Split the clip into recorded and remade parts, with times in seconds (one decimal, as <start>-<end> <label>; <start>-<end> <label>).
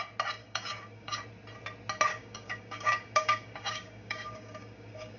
0.0-0.4 recorded; 0.4-1.2 remade; 1.2-2.1 recorded; 2.1-5.2 remade